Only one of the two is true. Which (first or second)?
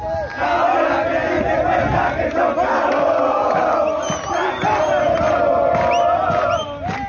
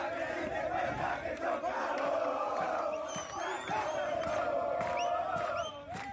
first